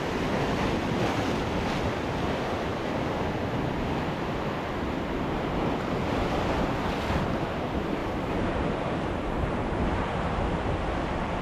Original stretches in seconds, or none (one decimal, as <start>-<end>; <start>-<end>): 0.0-8.0